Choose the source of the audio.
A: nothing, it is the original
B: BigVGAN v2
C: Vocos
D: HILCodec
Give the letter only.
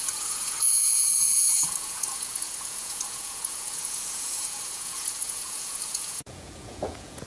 C